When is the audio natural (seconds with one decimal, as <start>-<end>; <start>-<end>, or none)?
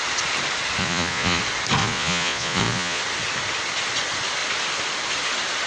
0.0-0.8; 1.4-1.8; 3.0-5.7